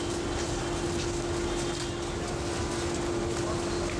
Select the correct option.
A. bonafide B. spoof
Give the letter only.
A